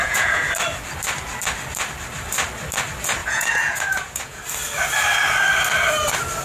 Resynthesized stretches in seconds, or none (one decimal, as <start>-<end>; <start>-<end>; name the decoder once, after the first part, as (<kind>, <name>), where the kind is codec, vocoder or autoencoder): 0.0-0.5 (vocoder, Vocos); 3.2-4.4